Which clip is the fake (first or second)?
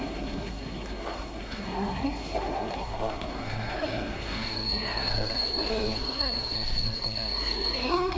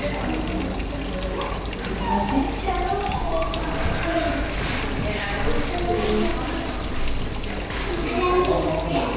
first